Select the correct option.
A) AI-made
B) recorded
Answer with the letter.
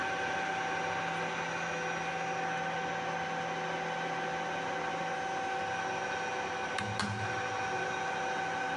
B